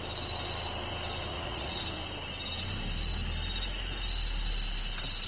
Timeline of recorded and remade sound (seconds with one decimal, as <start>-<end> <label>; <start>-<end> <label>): 0.0-1.3 recorded; 1.3-1.8 remade; 1.8-5.3 recorded